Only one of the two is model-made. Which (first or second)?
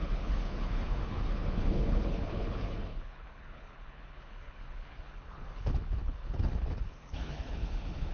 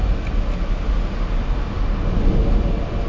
first